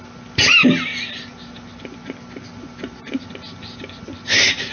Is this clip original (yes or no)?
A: yes